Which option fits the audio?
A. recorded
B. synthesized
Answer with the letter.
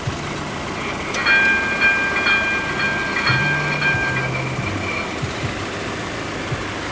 A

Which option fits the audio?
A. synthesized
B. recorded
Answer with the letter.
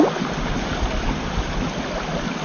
B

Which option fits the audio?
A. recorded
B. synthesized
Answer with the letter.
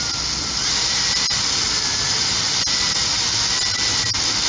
A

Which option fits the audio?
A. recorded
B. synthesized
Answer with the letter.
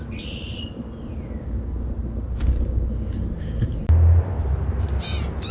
A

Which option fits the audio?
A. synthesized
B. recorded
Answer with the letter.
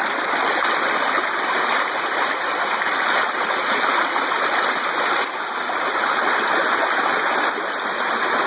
B